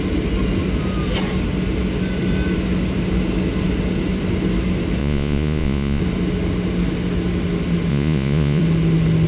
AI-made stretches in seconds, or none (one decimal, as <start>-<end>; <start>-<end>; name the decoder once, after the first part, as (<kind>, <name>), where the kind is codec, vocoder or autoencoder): 5.0-6.0 (vocoder, Vocos); 7.9-8.6

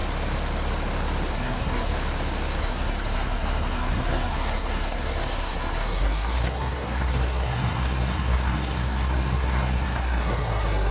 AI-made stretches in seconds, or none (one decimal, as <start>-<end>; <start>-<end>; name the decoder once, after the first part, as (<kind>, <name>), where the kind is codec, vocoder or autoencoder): 1.3-1.9 (codec, SNAC); 2.6-10.9

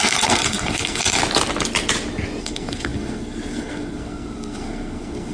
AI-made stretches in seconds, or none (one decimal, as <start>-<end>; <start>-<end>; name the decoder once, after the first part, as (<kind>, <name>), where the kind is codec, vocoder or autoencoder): 0.0-1.2 (codec, SNAC); 2.4-5.3

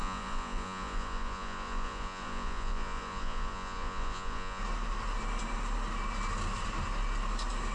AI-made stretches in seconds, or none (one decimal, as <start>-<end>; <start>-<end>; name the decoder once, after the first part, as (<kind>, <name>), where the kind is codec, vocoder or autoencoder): 0.0-4.6 (vocoder, Vocos)

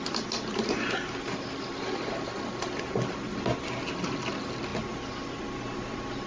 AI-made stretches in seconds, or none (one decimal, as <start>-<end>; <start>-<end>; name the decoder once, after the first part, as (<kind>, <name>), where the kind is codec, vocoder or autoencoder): none